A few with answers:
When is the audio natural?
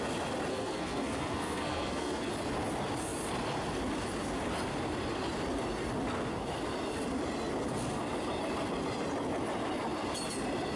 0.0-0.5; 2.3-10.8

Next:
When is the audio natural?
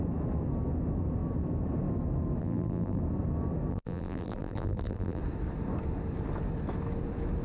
0.0-2.4; 3.0-3.7; 5.2-7.4